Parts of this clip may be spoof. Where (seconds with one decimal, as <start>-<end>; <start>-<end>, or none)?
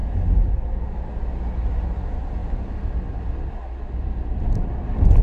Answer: none